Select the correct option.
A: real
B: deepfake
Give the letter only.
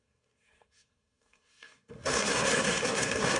B